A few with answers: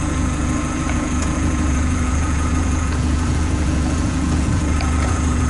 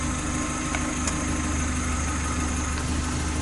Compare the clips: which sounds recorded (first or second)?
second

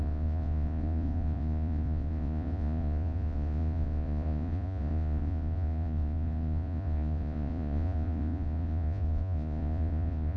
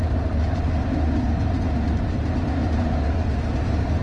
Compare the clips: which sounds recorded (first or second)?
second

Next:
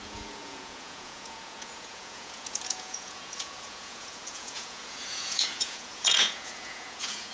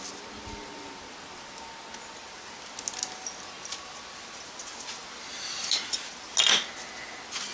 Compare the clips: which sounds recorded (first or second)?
second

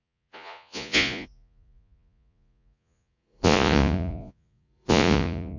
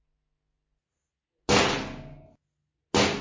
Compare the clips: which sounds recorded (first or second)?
second